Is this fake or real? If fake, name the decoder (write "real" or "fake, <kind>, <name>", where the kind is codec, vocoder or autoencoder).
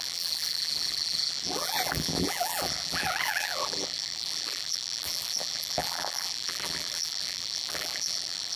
fake, vocoder, BigVGAN v2